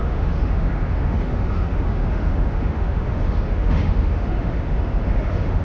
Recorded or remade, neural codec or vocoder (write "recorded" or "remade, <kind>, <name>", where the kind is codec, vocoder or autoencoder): remade, autoencoder, DAC-VAE